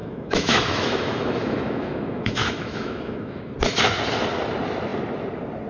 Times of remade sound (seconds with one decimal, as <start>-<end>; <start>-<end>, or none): 0.0-3.4